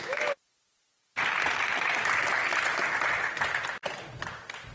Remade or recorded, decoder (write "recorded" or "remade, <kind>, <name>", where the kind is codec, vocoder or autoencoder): recorded